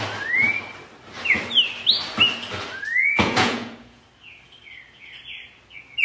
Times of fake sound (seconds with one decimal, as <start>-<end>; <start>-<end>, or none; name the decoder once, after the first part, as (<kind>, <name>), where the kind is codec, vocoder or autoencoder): 3.0-4.0 (vocoder, Vocos)